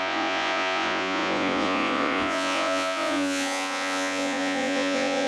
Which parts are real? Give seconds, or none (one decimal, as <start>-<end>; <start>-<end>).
none